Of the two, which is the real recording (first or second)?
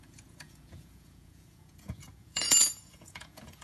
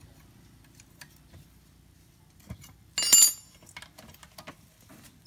second